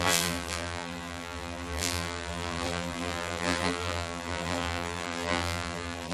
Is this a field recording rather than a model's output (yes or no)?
no